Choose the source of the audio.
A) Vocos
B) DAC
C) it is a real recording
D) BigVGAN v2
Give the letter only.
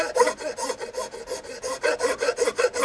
C